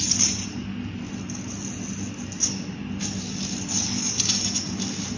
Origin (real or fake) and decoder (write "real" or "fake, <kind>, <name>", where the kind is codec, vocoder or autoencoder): real